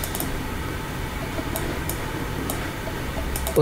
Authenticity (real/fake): fake